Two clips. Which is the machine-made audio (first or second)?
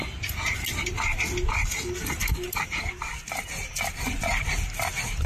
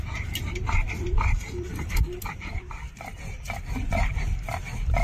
second